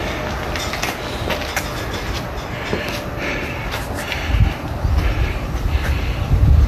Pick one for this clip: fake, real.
real